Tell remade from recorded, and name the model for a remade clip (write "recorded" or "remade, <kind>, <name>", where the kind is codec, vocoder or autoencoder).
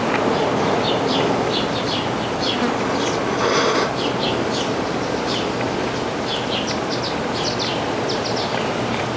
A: recorded